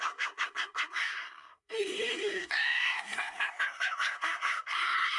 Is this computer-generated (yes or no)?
yes